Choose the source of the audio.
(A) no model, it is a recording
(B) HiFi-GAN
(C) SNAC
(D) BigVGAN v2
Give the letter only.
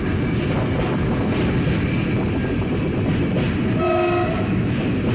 A